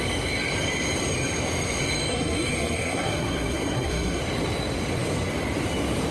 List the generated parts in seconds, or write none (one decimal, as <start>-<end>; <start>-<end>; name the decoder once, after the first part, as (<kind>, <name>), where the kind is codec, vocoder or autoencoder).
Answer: 2.1-4.2 (codec, SNAC)